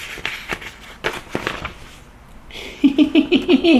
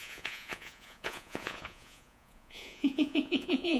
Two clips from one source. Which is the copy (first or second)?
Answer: second